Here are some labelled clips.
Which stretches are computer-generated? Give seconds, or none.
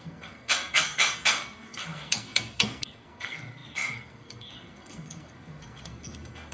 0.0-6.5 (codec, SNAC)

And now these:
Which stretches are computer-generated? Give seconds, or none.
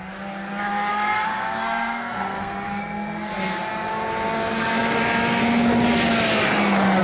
0.9-3.3 (codec, SNAC)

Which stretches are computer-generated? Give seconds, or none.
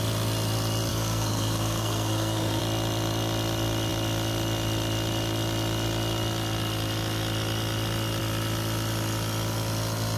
0.9-2.6 (codec, SNAC)